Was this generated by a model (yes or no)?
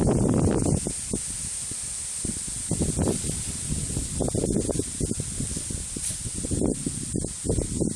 no